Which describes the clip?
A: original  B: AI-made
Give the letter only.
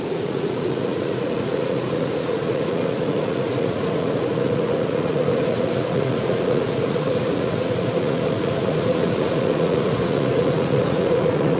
B